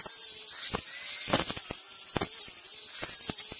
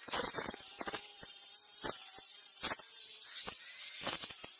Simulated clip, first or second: second